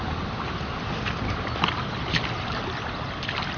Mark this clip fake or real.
real